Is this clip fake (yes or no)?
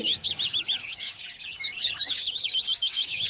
yes